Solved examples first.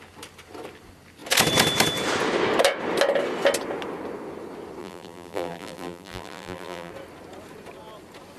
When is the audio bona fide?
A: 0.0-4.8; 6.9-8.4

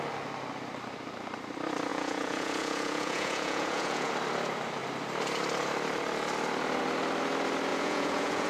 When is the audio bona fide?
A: 0.0-1.9; 4.1-7.7